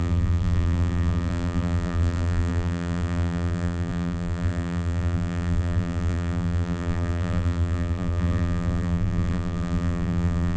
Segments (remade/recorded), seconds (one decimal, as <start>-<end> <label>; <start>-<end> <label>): 0.0-10.6 remade